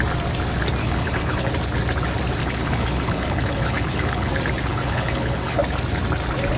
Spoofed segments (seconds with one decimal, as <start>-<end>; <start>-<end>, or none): 0.8-1.5; 2.4-4.3; 4.7-5.6